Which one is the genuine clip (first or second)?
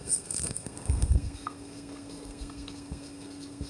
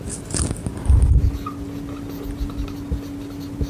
second